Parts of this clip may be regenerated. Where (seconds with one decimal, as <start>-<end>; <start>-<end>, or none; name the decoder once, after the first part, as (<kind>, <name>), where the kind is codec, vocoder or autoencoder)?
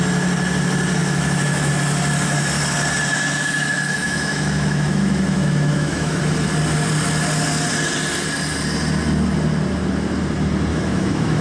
1.0-1.7 (autoencoder, DAC-VAE); 3.1-6.2; 10.7-11.4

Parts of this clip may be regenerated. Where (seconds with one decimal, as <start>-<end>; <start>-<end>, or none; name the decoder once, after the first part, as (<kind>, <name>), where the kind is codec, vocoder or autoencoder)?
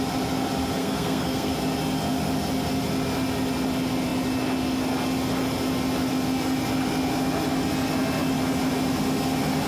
0.8-1.5 (codec, SNAC)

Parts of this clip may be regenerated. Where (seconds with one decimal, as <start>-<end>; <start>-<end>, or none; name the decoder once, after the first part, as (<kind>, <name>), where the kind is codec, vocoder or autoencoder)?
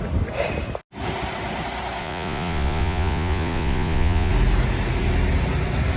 2.0-4.3 (vocoder, Vocos)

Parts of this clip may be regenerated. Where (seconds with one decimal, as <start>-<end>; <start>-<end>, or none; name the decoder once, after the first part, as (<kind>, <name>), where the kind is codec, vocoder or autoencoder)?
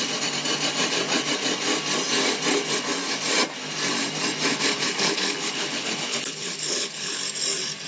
4.5-7.2 (codec, HILCodec)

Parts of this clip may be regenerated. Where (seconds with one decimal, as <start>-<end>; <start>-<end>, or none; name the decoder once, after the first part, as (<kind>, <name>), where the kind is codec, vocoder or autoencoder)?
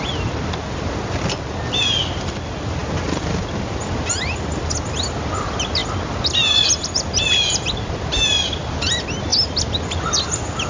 none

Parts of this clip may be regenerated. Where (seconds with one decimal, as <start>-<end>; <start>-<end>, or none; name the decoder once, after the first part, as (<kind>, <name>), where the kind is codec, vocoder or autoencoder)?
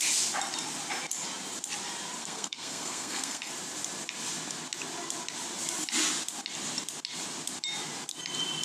2.2-3.5 (codec, SNAC)